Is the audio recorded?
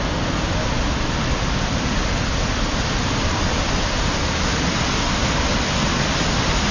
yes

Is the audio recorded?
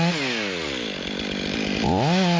yes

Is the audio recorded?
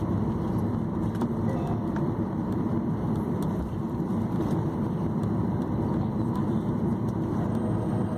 no